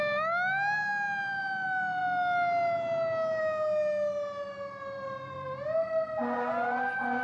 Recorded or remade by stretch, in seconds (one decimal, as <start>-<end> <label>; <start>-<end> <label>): 0.0-7.2 recorded